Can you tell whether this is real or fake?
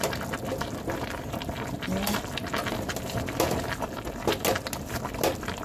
real